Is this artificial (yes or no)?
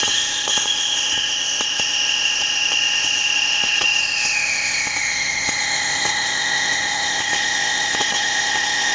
yes